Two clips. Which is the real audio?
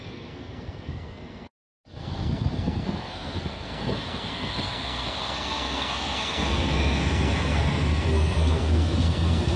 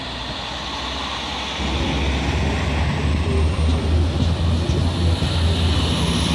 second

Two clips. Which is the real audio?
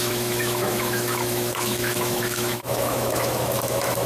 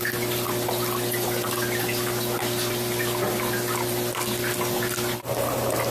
second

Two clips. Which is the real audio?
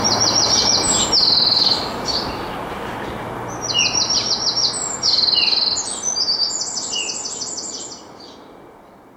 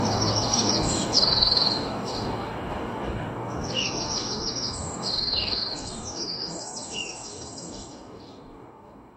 first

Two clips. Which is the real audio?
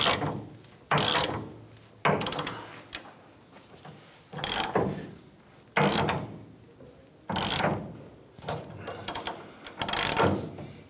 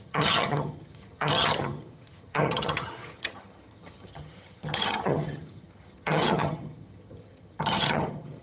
first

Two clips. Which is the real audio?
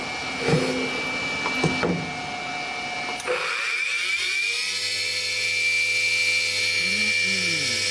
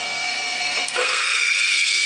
first